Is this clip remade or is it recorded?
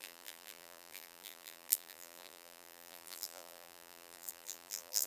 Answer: remade